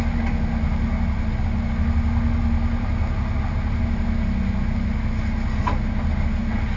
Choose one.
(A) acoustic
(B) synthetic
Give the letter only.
A